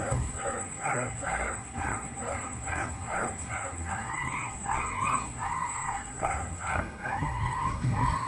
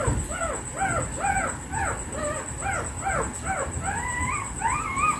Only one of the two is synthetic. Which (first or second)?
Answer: first